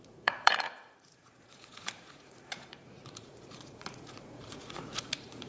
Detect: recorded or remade remade